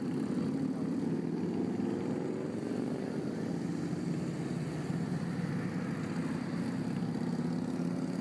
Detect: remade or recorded recorded